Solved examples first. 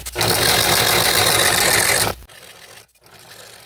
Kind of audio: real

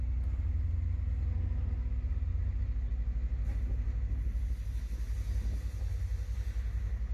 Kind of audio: real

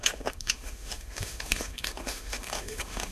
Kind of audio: fake